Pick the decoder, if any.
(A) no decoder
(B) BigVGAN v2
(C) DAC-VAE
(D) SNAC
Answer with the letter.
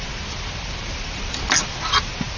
A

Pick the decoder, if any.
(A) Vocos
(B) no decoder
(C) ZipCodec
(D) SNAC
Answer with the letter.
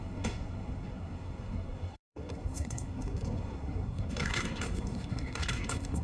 D